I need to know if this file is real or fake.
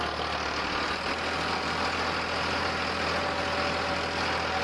real